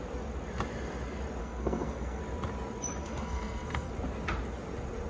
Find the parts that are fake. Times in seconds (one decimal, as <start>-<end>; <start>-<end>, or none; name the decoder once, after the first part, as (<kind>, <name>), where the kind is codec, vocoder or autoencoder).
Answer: 1.4-2.2 (codec, SNAC); 3.0-3.9